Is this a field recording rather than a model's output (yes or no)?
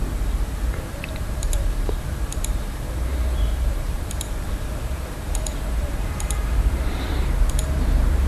no